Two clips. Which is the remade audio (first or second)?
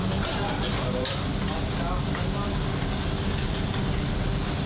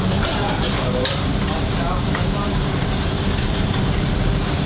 second